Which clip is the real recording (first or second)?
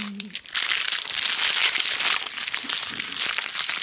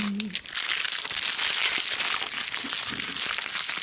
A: second